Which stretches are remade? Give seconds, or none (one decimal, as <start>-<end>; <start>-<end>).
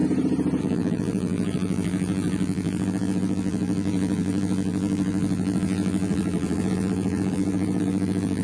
0.6-8.4